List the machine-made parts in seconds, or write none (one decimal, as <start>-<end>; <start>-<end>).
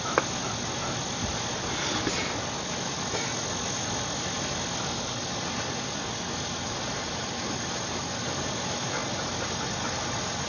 none